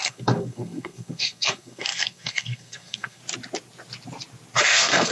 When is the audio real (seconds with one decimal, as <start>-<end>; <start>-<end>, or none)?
3.2-4.6